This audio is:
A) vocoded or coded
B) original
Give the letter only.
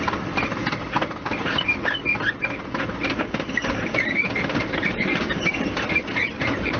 B